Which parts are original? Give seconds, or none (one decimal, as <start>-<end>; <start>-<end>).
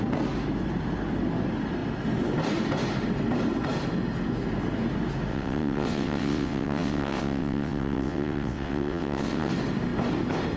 0.0-5.3; 9.5-10.6